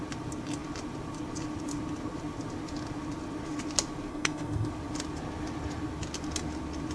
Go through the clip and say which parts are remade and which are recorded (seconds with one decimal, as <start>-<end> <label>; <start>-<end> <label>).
0.0-4.1 recorded; 4.1-4.7 remade; 4.7-6.9 recorded